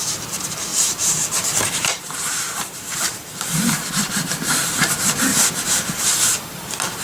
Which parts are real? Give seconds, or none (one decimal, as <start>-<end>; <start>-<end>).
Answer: 5.3-6.4

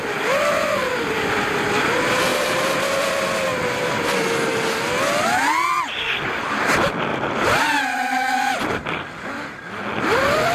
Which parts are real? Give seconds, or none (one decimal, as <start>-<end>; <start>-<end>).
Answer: 0.0-2.3; 3.1-7.1; 8.6-10.5